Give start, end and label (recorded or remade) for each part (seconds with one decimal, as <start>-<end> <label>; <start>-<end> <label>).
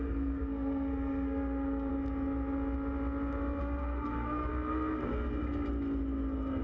0.0-1.9 remade; 1.9-3.6 recorded; 3.6-4.5 remade; 4.5-6.6 recorded